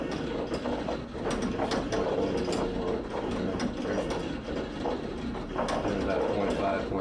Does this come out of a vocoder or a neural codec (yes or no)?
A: no